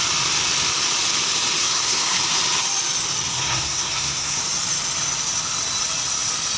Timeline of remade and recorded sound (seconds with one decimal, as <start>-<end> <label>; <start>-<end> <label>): 0.0-1.6 recorded; 1.6-2.2 remade; 2.2-3.3 recorded; 3.3-4.4 remade; 4.4-6.6 recorded